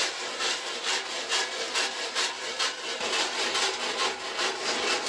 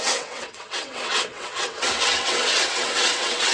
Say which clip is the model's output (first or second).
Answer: second